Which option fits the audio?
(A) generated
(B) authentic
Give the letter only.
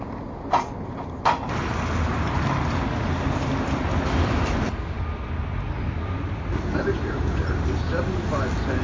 B